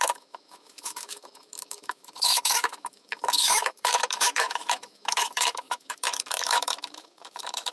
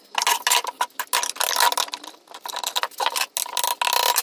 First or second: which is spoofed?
first